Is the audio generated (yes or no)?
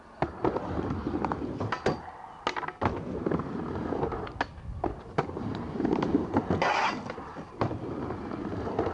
no